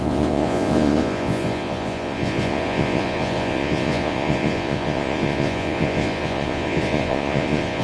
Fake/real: fake